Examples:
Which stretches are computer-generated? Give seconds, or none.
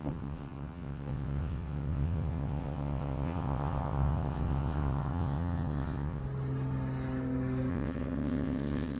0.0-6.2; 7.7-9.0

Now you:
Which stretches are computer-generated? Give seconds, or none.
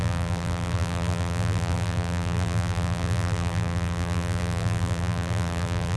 0.0-6.0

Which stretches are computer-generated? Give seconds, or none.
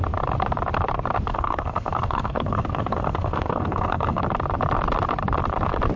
1.3-4.2